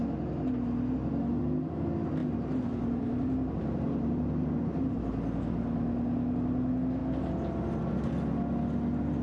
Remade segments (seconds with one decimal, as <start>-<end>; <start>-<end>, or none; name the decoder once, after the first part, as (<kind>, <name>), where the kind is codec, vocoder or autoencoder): 2.2-5.0 (vocoder, BigVGAN v2)